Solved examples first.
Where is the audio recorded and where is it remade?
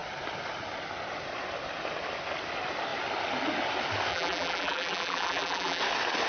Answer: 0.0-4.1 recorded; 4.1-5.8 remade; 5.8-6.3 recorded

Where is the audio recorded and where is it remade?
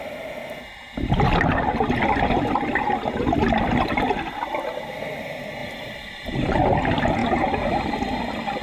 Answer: 0.0-5.6 recorded; 5.6-6.6 remade; 6.6-8.6 recorded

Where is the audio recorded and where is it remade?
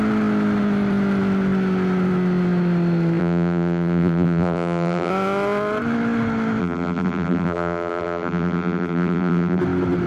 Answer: 0.0-3.2 recorded; 3.2-5.1 remade; 5.1-6.6 recorded; 6.6-9.6 remade; 9.6-10.1 recorded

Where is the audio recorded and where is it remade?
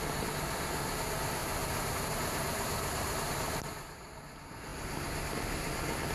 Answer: 0.0-1.4 recorded; 1.4-3.3 remade; 3.3-6.1 recorded